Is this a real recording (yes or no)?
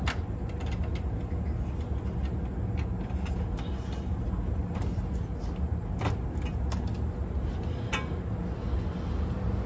yes